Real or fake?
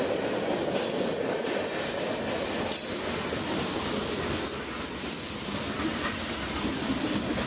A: real